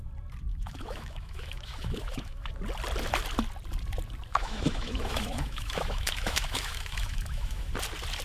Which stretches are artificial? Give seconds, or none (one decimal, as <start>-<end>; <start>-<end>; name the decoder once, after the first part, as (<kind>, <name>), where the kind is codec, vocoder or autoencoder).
0.5-2.5 (autoencoder, DAC-VAE); 4.3-7.7